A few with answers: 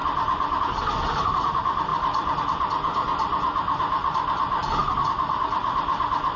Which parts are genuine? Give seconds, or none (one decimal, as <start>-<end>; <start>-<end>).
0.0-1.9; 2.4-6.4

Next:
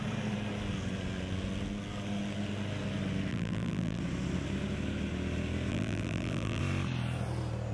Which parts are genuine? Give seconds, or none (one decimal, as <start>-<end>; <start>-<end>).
0.0-3.3; 4.0-5.7; 6.6-7.7

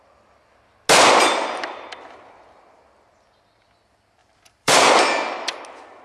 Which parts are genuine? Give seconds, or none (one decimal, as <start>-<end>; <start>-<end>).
0.0-4.2; 5.0-6.0